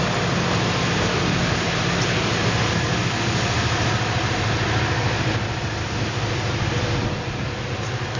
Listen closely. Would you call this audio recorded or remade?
recorded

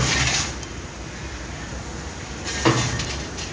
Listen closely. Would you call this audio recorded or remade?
recorded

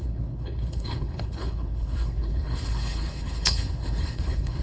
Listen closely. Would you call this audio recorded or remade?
remade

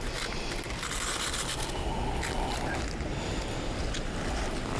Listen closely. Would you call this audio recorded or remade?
recorded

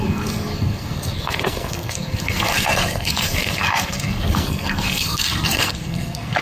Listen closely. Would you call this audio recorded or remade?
remade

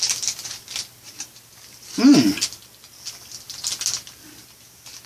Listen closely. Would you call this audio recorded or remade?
recorded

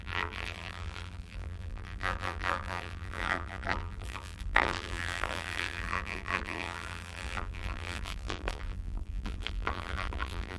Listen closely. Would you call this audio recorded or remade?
remade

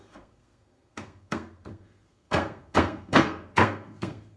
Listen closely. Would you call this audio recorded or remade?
remade